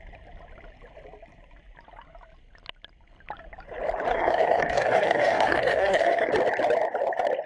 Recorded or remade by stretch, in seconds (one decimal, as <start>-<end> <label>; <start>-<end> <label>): 0.0-4.1 recorded; 4.1-6.3 remade; 6.3-7.5 recorded